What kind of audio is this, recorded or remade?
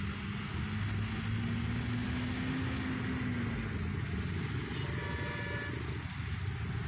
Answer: recorded